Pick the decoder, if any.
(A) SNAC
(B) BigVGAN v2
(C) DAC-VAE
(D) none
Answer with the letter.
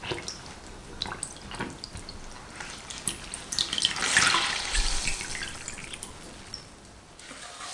D